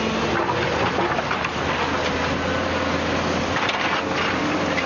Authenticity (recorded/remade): recorded